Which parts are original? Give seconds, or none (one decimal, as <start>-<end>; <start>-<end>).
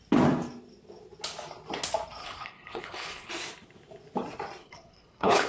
0.0-2.2; 3.3-4.6